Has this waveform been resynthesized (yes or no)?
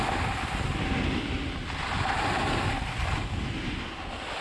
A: no